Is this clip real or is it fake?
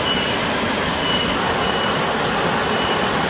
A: real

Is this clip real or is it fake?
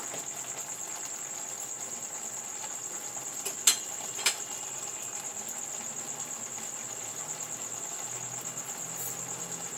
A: real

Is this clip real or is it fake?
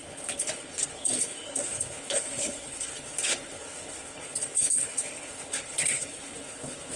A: fake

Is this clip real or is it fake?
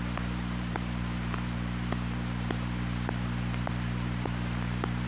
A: fake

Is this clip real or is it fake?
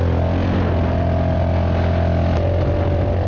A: real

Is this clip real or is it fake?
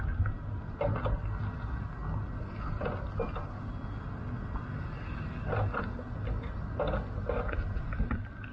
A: real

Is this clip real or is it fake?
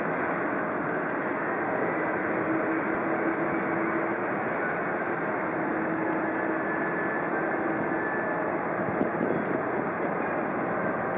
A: real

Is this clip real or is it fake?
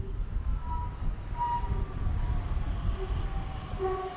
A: real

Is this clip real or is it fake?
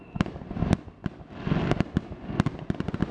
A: real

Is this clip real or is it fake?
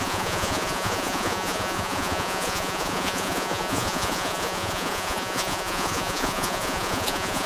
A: fake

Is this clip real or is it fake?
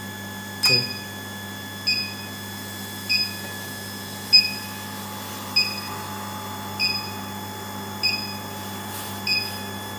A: real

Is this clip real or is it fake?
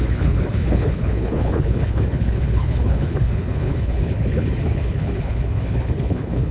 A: fake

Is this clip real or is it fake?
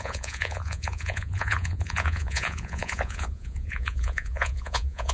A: fake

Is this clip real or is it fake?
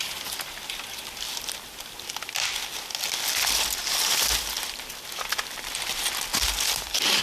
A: real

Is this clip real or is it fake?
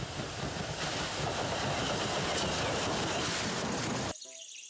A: real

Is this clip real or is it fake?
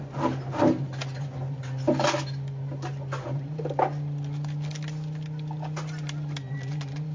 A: real